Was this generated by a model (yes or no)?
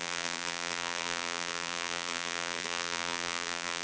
yes